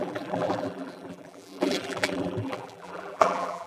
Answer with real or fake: fake